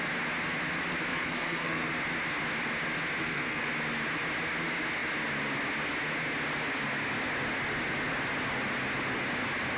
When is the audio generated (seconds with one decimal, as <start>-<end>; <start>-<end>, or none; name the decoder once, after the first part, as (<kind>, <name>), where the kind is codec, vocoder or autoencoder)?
1.1-1.9 (codec, SNAC); 3.2-3.7